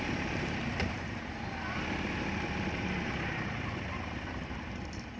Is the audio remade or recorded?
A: remade